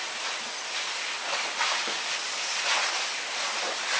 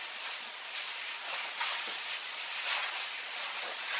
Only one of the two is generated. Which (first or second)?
second